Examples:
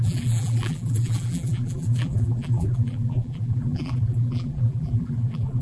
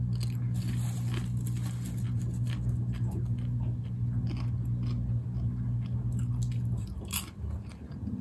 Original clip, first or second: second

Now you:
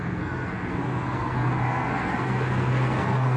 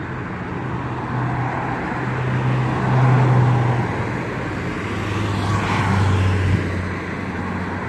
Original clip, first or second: second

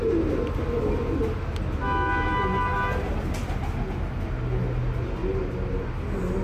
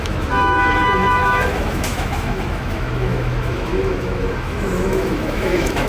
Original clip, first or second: first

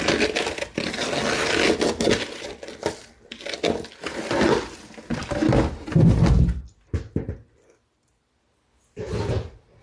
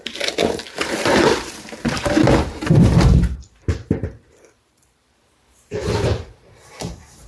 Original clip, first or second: first